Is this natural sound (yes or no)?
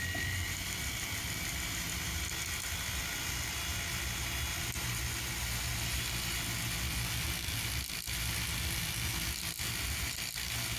yes